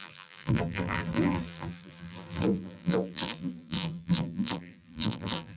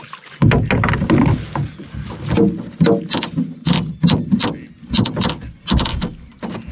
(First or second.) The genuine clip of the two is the second